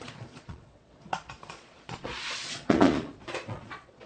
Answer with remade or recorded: remade